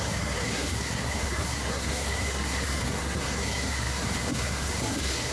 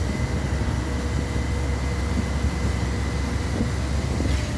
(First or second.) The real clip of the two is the second